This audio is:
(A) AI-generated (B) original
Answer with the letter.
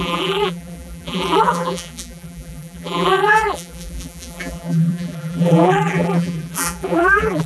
A